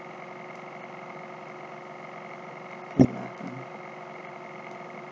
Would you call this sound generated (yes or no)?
no